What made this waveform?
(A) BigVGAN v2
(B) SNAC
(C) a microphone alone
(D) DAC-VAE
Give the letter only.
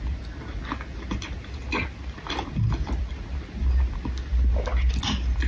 C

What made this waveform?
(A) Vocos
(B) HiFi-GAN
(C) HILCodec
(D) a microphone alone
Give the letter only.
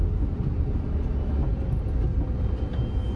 D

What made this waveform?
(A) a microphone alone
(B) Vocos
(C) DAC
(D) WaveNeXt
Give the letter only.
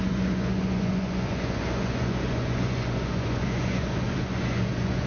B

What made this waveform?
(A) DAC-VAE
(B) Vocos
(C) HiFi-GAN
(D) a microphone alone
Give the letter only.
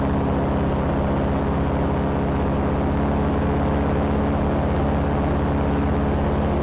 D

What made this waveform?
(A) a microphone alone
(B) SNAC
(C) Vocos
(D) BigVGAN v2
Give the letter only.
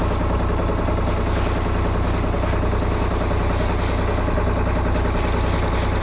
A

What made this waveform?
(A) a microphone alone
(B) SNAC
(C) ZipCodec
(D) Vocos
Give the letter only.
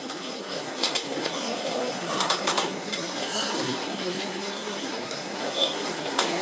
B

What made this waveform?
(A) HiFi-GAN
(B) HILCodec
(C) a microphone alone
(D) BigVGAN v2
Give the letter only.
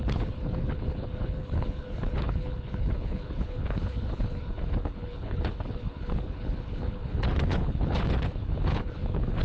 B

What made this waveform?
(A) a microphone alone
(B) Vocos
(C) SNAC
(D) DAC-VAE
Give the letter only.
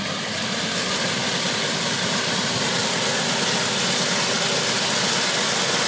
A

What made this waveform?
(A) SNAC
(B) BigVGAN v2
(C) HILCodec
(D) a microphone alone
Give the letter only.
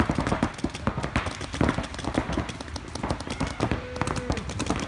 D